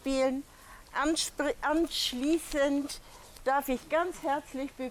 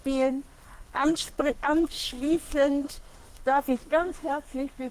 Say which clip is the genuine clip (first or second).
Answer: first